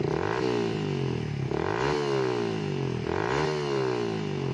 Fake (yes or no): no